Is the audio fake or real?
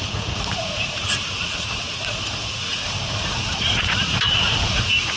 fake